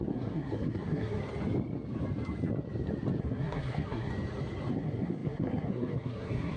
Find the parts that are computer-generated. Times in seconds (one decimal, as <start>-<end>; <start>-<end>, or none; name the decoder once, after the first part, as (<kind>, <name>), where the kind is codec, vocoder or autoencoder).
0.0-1.2 (codec, SNAC); 3.2-4.1; 4.7-6.6